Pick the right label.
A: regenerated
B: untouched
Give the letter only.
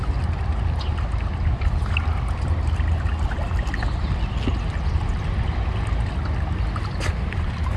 B